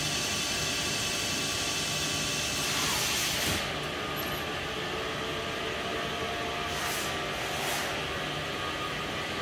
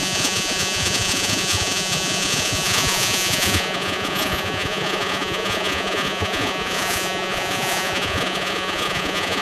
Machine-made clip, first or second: second